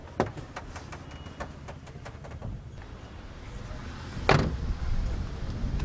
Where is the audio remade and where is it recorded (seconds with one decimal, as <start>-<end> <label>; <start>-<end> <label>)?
0.0-5.8 recorded